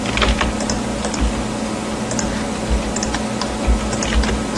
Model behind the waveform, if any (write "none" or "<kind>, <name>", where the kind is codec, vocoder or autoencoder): none